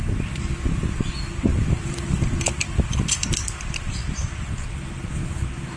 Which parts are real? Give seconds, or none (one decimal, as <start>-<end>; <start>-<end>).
0.0-1.5; 2.4-5.8